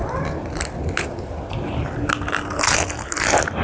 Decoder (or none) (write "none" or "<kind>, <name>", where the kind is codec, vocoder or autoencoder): none